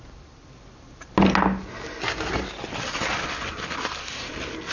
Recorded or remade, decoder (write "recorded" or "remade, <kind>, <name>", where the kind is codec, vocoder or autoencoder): recorded